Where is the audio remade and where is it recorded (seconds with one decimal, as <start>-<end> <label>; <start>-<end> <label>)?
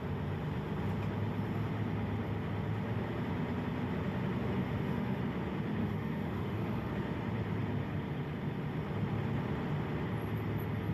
0.0-4.6 recorded; 4.6-5.2 remade; 5.2-5.8 recorded; 5.8-6.9 remade; 6.9-10.9 recorded